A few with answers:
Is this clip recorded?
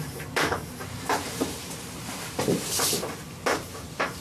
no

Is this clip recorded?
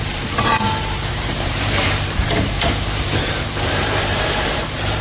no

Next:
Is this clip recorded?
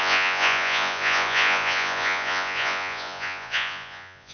no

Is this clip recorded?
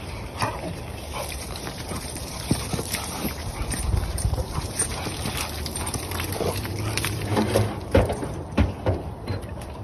no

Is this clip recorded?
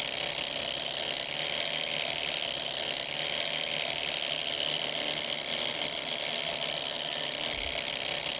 yes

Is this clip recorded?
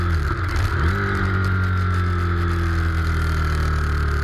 yes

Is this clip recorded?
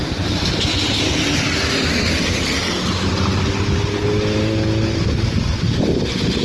yes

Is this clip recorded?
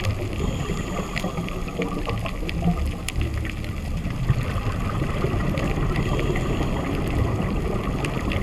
yes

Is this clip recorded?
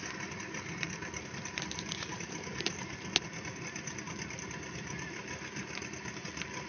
yes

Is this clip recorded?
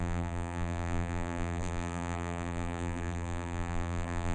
no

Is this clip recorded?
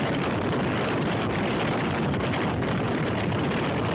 no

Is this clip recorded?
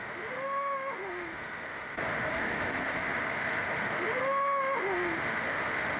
no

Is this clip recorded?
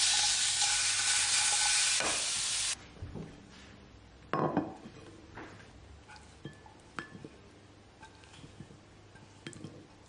yes